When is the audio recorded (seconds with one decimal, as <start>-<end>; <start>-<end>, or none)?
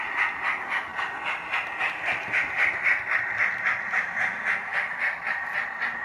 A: none